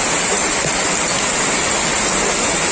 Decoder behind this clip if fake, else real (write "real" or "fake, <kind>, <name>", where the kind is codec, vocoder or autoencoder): real